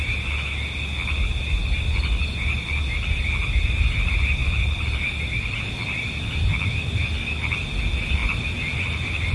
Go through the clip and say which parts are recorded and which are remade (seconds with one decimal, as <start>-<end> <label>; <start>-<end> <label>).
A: 0.0-4.4 recorded; 4.4-5.7 remade; 5.7-8.2 recorded; 8.2-8.8 remade; 8.8-9.3 recorded